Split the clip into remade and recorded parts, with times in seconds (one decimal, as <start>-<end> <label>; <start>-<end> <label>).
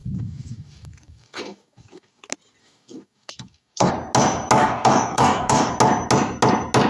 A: 0.0-2.2 remade; 2.2-2.6 recorded; 2.6-3.9 remade; 3.9-4.6 recorded; 4.6-5.7 remade; 5.7-6.9 recorded